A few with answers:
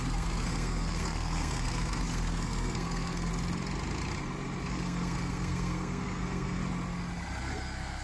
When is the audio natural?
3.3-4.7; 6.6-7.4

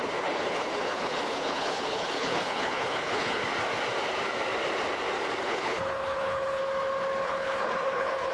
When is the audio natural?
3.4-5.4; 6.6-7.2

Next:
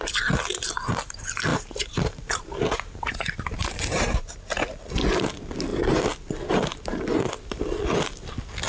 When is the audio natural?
0.0-1.5; 4.8-8.7

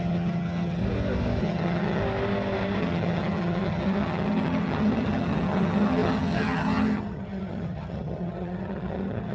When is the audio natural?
0.8-1.4; 2.0-2.8

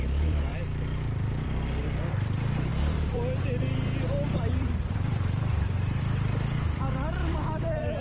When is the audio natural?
none

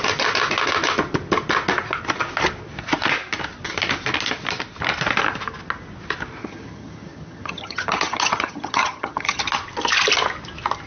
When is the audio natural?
0.0-6.4; 9.4-10.9